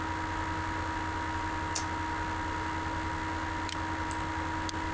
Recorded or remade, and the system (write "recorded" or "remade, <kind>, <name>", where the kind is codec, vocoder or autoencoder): recorded